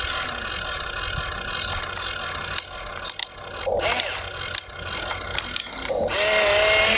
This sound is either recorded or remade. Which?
recorded